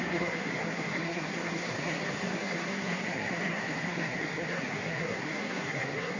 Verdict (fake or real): fake